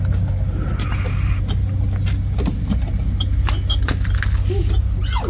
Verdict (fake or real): real